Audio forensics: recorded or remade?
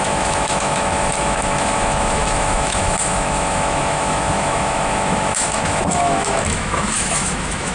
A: remade